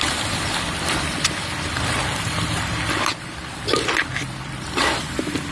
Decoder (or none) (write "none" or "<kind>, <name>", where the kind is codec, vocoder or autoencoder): vocoder, BigVGAN v2